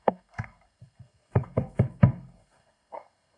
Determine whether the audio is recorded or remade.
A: remade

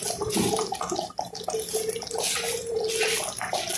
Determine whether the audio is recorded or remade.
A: recorded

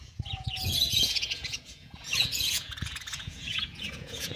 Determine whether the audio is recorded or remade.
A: remade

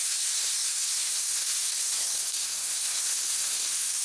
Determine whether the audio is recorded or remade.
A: remade